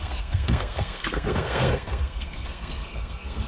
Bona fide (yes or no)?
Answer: no